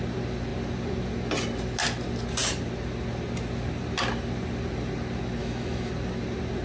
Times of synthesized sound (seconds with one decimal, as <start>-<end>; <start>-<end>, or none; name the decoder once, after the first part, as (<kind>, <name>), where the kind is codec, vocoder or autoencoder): 5.4-5.9 (autoencoder, DAC-VAE)